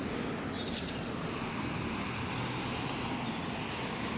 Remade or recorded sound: recorded